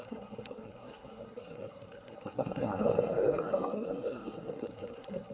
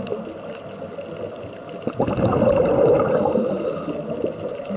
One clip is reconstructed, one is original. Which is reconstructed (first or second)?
first